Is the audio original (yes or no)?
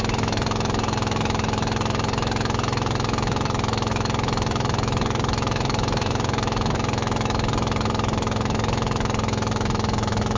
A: no